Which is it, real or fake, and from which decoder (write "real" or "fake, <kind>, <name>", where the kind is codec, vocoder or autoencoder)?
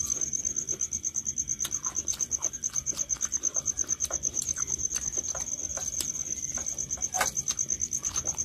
fake, vocoder, BigVGAN v2